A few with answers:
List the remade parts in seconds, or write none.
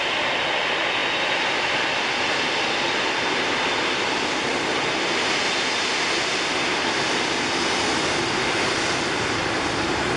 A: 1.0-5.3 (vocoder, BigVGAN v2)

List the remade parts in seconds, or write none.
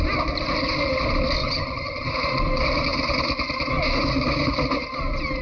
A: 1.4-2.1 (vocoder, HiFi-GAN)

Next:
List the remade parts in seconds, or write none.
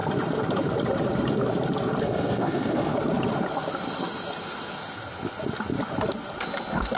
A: 2.0-2.9 (codec, SNAC)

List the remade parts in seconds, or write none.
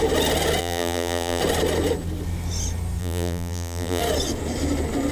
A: 0.6-1.4 (vocoder, BigVGAN v2); 3.0-4.0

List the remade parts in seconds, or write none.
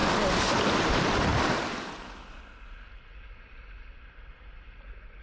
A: none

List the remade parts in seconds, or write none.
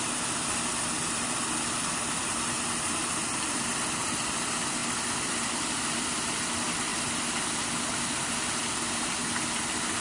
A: none